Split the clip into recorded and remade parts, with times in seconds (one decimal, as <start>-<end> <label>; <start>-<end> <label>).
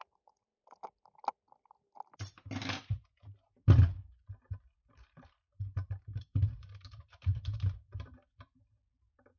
0.0-0.5 remade; 0.5-4.9 recorded; 4.9-9.4 remade